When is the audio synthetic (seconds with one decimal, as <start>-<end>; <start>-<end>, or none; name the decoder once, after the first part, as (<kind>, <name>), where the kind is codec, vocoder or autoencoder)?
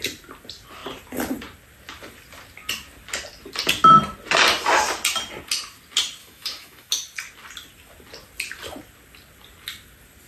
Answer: 6.2-6.9 (autoencoder, DAC-VAE)